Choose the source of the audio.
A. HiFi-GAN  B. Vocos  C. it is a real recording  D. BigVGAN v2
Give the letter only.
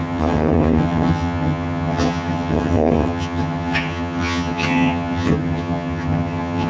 A